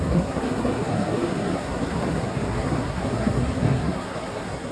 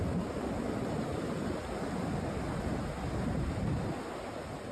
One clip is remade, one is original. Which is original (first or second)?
second